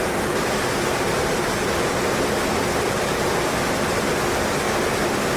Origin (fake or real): real